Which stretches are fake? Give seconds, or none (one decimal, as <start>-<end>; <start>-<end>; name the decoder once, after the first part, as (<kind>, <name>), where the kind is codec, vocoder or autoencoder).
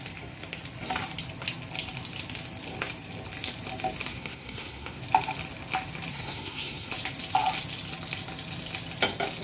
4.1-5.0 (codec, SNAC); 6.1-6.9